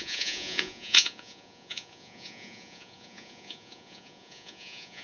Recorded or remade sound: remade